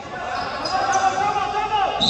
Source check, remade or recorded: recorded